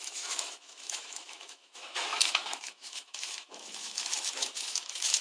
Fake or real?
fake